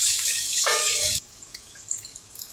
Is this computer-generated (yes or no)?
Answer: yes